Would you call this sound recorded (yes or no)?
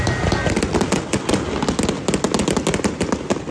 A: yes